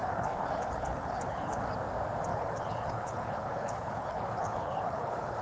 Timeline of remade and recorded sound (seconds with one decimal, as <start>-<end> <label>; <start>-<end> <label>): 0.0-1.6 remade; 1.6-2.3 recorded; 2.3-5.4 remade